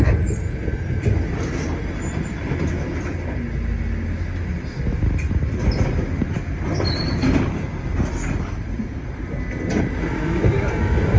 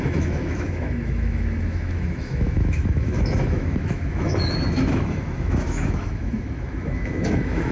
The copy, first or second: second